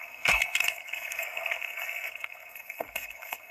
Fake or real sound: fake